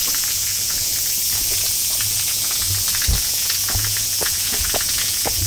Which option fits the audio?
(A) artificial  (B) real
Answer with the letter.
A